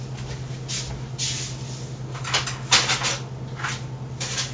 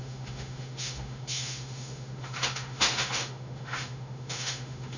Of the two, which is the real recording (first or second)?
first